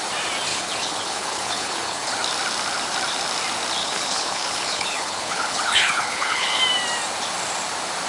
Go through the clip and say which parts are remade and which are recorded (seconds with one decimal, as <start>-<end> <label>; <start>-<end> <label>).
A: 0.0-0.5 recorded; 0.5-2.1 remade; 2.1-3.8 recorded; 3.8-6.6 remade; 6.6-8.1 recorded